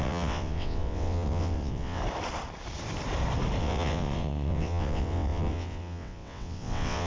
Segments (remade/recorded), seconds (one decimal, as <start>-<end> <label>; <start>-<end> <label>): 0.0-2.0 remade; 2.0-3.6 recorded; 3.6-7.1 remade